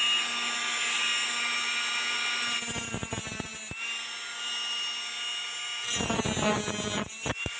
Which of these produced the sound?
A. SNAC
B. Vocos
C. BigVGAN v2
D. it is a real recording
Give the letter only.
D